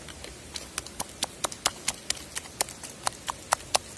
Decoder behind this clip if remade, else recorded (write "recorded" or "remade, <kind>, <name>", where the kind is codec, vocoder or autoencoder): recorded